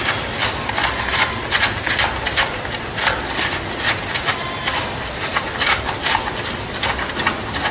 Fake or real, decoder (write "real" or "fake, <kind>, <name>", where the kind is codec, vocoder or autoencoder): real